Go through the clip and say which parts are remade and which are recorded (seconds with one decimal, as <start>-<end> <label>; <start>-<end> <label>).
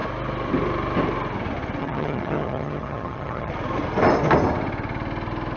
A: 0.0-1.8 recorded; 1.8-3.5 remade; 3.5-5.6 recorded